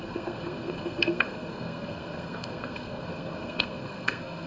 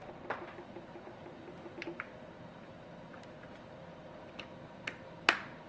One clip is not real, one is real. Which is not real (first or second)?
first